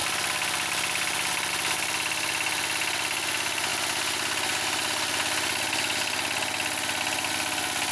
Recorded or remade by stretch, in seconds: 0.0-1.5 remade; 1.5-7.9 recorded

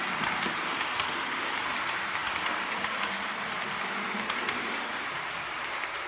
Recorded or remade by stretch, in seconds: 0.0-6.1 recorded

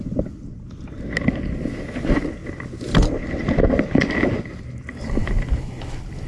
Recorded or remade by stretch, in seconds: 0.0-5.2 recorded; 5.2-6.3 remade

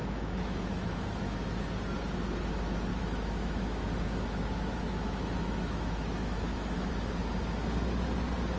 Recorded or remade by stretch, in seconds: 0.0-1.6 remade; 1.6-2.9 recorded; 2.9-6.9 remade; 6.9-8.6 recorded

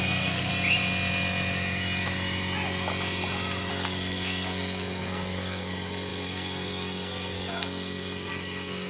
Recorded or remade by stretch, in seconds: 0.0-0.5 remade; 0.5-3.7 recorded; 3.7-8.9 remade

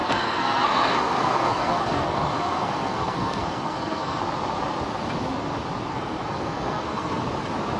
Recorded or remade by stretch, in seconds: 0.0-4.2 remade; 4.2-5.9 recorded; 5.9-7.2 remade; 7.2-7.8 recorded

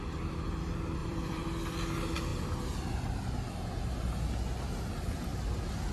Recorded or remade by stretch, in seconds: 0.0-1.0 recorded; 1.0-1.5 remade; 1.5-5.9 recorded